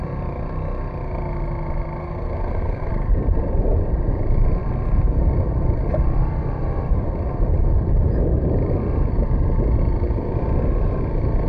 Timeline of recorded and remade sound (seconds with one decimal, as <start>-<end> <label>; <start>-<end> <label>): 0.0-2.0 recorded; 2.0-2.9 remade; 2.9-11.5 recorded